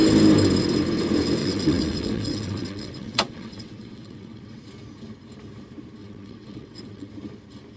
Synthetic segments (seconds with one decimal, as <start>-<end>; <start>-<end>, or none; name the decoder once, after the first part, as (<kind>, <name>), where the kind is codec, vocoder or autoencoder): 1.4-4.6 (vocoder, WaveNeXt); 6.0-7.1

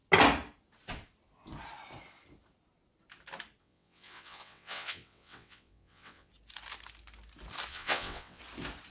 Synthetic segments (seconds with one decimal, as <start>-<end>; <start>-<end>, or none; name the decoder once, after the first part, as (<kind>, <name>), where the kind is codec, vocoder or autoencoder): 3.6-6.3 (vocoder, WaveNeXt); 7.7-8.4

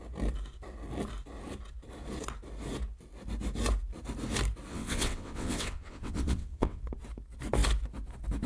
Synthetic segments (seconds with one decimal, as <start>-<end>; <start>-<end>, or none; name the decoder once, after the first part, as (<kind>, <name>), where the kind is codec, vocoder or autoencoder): 4.7-6.8 (vocoder, WaveNeXt)